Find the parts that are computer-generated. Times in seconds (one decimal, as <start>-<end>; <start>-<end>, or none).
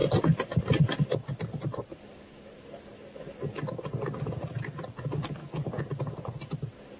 none